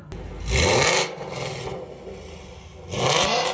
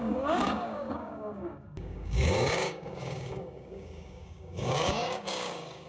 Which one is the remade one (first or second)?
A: second